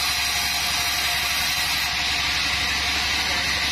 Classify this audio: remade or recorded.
recorded